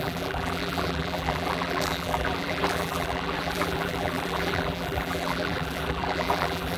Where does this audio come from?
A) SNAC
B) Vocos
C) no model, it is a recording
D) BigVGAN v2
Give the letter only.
D